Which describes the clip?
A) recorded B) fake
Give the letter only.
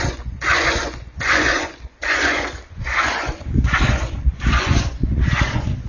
B